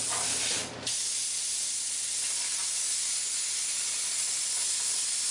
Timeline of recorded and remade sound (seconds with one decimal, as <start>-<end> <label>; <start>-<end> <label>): 0.0-5.3 recorded